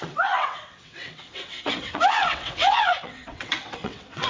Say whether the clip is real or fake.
fake